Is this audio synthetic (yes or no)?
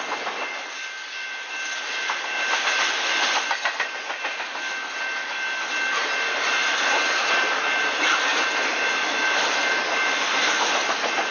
no